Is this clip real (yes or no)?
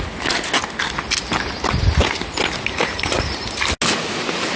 yes